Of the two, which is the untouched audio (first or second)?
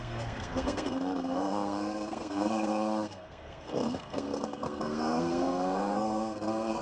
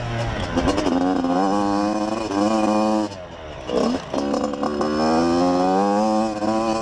second